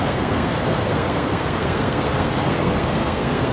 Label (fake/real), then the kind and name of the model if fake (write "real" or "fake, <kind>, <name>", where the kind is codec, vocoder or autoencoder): fake, codec, SNAC